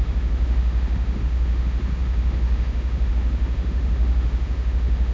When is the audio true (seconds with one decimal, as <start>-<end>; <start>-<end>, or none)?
none